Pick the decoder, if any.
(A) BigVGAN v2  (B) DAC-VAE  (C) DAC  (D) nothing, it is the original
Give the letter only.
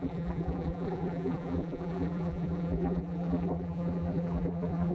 A